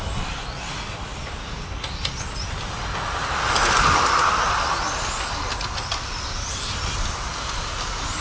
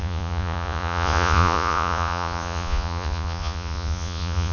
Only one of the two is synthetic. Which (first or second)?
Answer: second